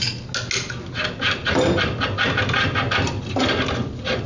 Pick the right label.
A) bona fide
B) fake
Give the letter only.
A